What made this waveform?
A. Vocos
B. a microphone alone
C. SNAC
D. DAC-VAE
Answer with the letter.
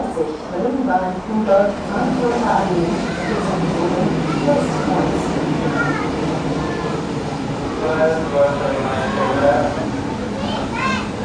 B